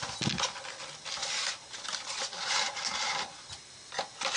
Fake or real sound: real